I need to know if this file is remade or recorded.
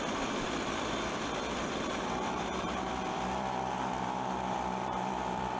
remade